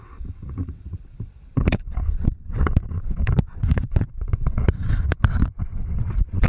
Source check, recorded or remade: remade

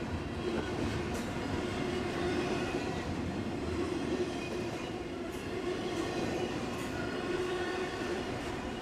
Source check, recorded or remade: remade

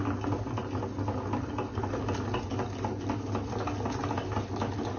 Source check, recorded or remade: recorded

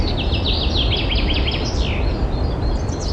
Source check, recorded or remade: recorded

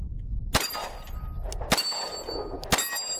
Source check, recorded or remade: recorded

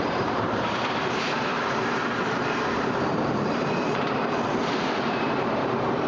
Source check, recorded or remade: remade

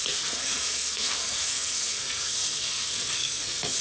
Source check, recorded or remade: remade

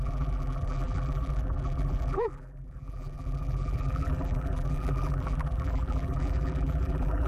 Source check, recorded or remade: remade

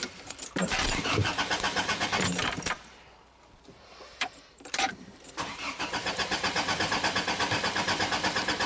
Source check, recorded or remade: remade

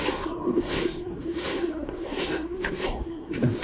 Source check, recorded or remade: remade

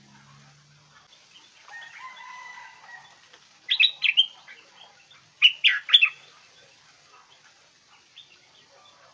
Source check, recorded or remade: recorded